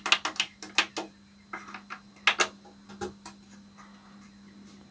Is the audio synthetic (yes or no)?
no